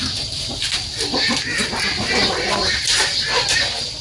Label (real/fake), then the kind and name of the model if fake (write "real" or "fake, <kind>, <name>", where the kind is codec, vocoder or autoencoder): fake, vocoder, BigVGAN v2